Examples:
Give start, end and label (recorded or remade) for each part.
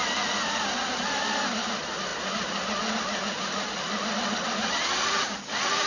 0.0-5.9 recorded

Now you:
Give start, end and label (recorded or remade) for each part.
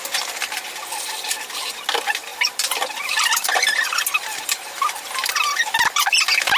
0.0-6.6 recorded